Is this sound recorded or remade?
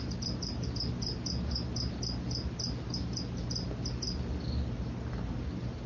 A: recorded